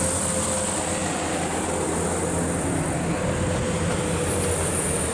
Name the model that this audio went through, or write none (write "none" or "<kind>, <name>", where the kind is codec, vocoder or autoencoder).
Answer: none